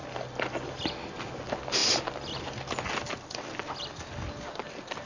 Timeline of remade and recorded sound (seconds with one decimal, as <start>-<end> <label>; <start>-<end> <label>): 0.0-5.1 recorded